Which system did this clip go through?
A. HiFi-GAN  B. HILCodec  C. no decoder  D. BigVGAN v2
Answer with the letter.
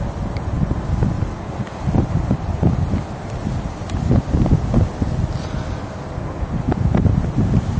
C